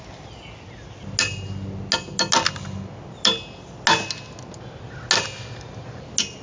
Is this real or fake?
real